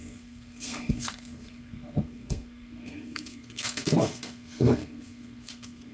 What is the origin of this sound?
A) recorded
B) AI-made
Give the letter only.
B